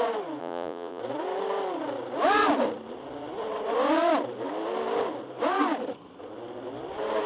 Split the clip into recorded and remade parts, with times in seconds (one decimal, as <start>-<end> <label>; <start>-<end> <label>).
0.0-0.4 recorded; 0.4-1.0 remade; 1.0-7.3 recorded